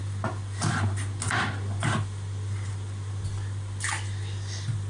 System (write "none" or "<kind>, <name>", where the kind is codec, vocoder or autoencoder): none